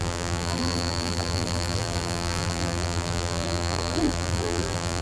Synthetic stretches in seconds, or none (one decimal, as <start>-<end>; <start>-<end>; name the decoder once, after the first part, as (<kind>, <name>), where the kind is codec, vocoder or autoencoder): 0.0-5.0 (vocoder, BigVGAN v2)